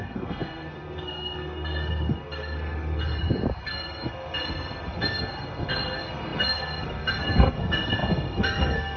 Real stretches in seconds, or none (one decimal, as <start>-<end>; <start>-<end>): 3.0-3.6